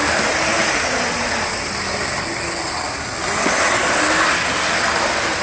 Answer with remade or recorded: recorded